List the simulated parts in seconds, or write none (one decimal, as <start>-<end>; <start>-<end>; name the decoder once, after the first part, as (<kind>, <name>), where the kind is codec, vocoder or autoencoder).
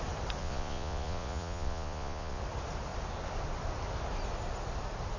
0.4-2.4 (vocoder, Vocos)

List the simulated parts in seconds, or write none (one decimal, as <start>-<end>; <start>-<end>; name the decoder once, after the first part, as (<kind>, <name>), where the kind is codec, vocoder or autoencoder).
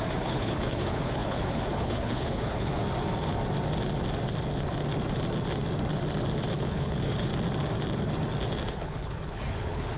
0.0-2.8 (codec, HILCodec); 6.5-7.3; 8.7-10.0